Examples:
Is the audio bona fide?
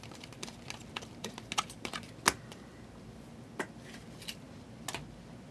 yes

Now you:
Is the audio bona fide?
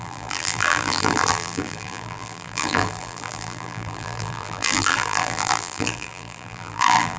no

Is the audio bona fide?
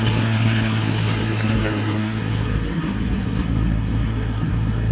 no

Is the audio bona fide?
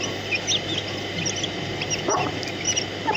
yes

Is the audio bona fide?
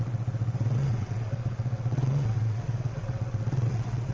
no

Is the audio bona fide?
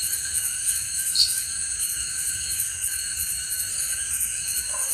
no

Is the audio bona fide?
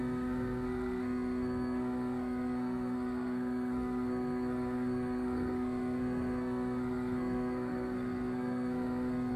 no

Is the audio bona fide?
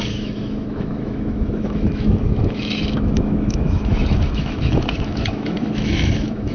no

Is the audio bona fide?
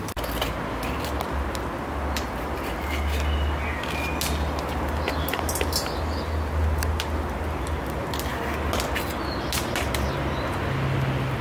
yes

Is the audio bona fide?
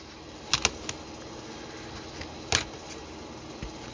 yes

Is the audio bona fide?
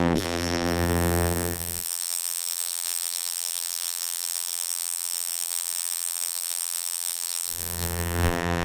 no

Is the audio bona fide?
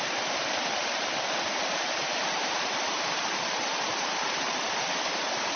no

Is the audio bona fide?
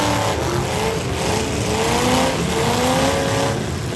yes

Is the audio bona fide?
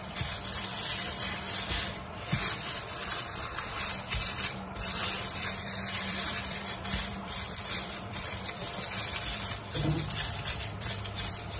no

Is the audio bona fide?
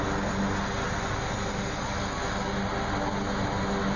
yes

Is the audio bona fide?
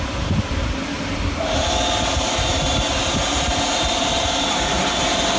yes